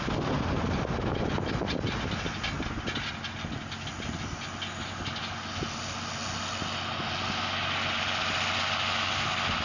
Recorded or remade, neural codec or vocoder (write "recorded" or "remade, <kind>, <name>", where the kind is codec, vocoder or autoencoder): recorded